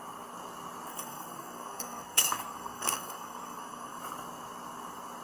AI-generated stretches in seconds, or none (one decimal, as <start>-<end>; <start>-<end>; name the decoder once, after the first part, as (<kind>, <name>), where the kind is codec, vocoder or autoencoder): 0.9-4.0 (codec, SNAC)